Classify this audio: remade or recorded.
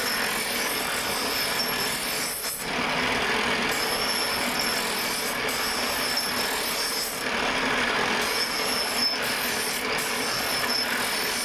recorded